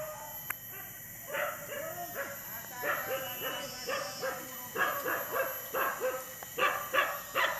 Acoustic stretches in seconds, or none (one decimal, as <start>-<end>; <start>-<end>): 0.0-7.6